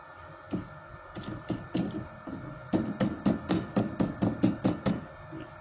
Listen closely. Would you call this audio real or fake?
real